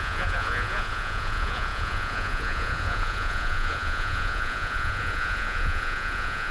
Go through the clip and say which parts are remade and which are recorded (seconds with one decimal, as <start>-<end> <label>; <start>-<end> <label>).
0.0-6.5 remade